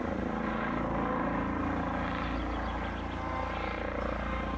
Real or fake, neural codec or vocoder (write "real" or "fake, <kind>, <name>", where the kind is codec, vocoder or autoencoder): real